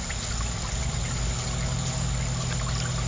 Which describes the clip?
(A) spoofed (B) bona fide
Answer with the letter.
B